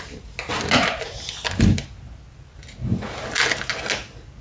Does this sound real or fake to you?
real